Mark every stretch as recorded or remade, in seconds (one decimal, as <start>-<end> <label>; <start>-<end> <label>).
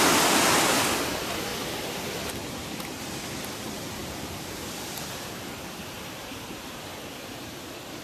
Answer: 0.0-6.9 remade; 6.9-8.0 recorded